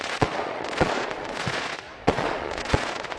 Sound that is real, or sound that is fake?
fake